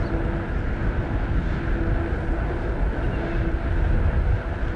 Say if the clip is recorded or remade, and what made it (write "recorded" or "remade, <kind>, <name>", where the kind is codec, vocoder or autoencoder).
recorded